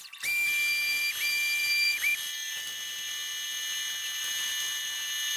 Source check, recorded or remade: recorded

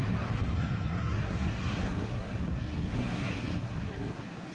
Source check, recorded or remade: remade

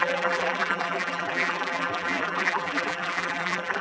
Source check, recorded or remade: remade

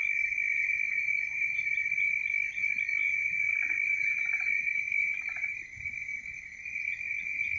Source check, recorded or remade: recorded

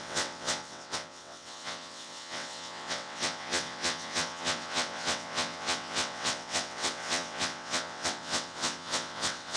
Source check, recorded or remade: remade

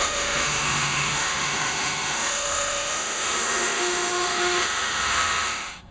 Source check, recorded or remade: remade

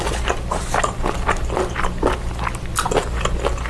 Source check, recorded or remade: recorded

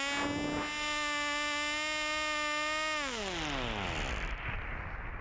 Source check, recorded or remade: recorded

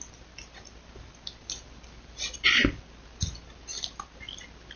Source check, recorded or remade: recorded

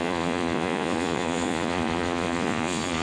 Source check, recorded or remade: remade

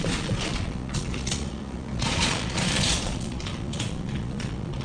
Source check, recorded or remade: remade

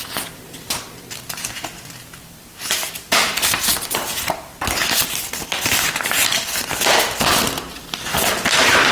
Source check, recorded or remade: remade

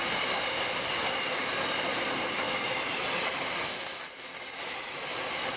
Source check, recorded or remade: recorded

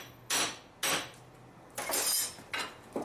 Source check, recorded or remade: recorded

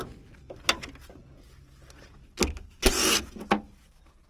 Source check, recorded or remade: recorded